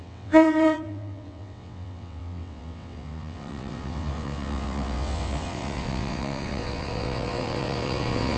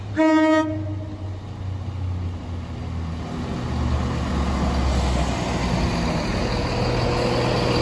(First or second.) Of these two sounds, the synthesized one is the first